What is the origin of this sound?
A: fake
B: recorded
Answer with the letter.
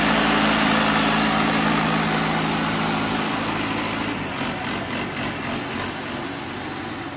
B